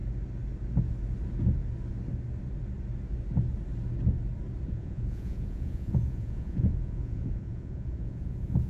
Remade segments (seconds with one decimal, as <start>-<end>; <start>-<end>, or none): 4.7-8.7

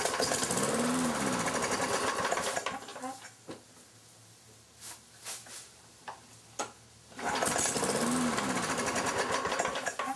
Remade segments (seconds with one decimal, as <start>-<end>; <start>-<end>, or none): none

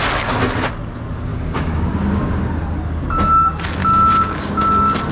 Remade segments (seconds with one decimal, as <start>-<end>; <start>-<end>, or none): 1.3-2.4; 3.8-4.6

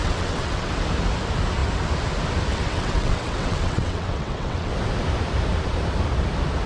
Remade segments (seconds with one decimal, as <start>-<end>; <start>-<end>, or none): 0.0-0.7; 2.5-4.7

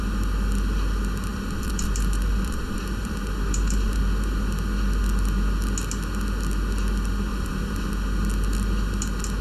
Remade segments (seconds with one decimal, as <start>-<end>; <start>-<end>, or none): 1.3-4.0; 7.3-7.9

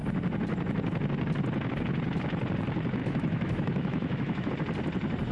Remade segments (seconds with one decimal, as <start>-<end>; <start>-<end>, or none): 3.0-4.5

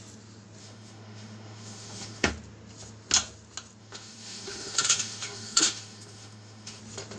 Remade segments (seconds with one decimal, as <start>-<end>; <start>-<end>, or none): 0.6-2.3; 3.8-6.8

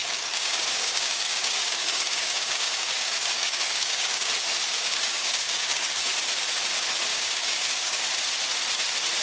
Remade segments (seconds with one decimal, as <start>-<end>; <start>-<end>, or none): 0.0-4.3; 4.7-6.1; 7.1-8.0